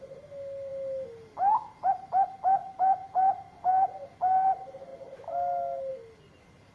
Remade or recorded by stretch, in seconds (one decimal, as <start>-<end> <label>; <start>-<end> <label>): 0.0-2.6 recorded; 2.6-3.4 remade; 3.4-6.7 recorded